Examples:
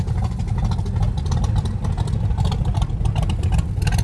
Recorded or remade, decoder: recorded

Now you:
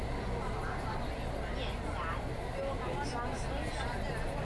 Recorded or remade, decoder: recorded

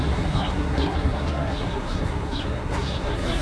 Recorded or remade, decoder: remade, codec, SNAC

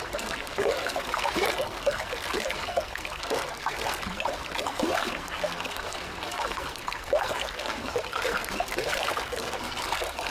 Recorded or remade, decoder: remade, codec, SNAC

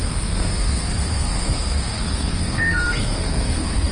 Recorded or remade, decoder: remade, codec, SNAC